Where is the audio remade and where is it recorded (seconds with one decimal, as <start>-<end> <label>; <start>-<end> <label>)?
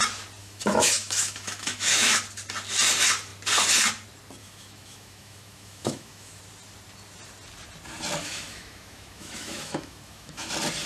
0.0-0.4 recorded; 0.4-2.2 remade; 2.2-4.4 recorded; 4.4-6.4 remade; 6.4-8.2 recorded; 8.2-10.5 remade; 10.5-10.9 recorded